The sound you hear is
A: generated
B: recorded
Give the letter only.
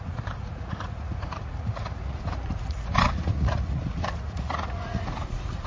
A